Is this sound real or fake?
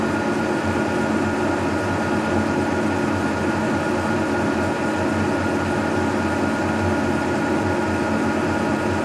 real